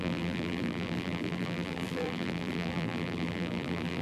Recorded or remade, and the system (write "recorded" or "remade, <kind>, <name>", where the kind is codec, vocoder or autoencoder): remade, vocoder, BigVGAN v2